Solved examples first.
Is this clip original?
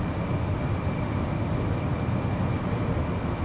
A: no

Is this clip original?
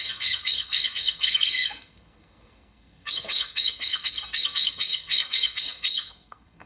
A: no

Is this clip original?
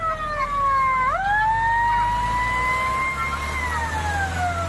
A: yes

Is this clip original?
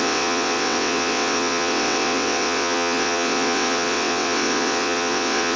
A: no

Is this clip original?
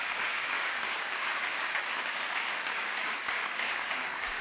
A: no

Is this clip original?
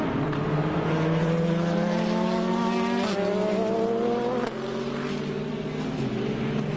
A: yes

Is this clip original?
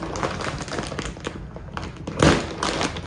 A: yes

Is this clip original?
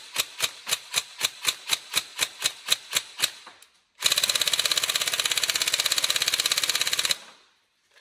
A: yes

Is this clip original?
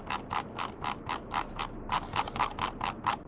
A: yes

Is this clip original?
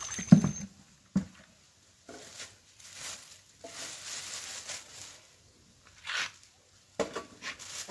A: yes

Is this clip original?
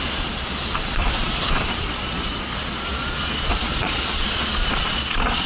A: no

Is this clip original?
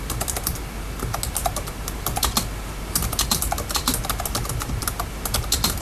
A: yes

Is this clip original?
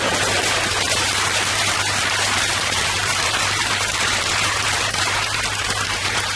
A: no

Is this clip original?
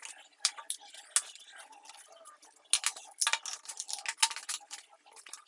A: yes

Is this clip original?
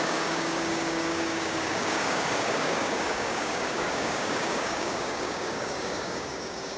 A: no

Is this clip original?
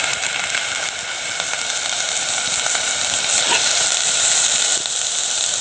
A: yes